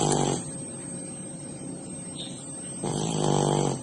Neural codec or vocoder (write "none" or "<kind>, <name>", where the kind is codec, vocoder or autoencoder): none